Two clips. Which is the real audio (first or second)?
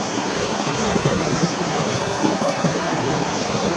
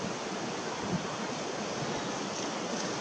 second